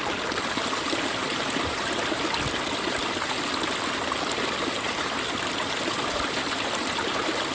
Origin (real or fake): real